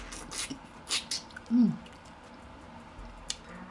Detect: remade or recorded recorded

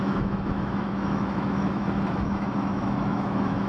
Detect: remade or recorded remade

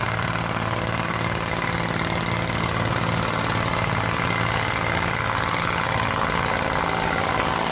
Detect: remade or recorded recorded